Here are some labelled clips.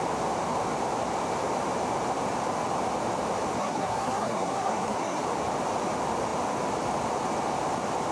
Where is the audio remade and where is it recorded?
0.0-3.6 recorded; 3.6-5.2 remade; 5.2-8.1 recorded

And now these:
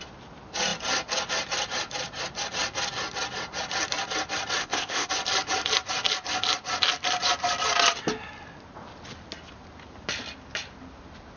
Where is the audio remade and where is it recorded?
0.0-4.6 recorded; 4.6-5.1 remade; 5.1-11.4 recorded

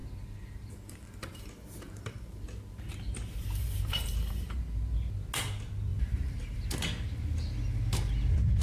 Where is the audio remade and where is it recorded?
0.0-4.6 remade; 4.6-5.9 recorded; 5.9-6.7 remade; 6.7-8.6 recorded